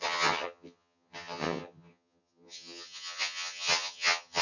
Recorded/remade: remade